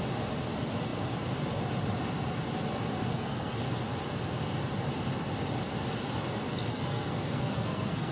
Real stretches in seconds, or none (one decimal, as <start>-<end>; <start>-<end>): 0.0-3.0; 3.5-6.7